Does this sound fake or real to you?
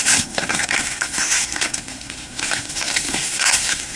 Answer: fake